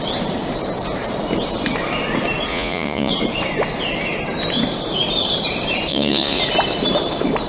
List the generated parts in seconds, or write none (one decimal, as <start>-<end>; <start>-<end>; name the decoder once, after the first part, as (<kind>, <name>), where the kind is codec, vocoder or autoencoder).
2.5-3.1 (vocoder, Vocos); 5.9-6.4